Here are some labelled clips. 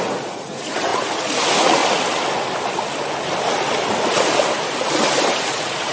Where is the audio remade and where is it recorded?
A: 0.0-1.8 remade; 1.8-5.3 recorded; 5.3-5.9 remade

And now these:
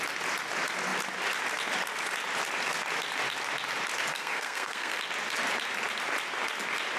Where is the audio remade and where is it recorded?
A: 0.0-4.1 recorded; 4.1-5.0 remade; 5.0-7.0 recorded